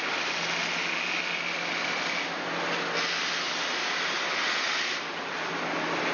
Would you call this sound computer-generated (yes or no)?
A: no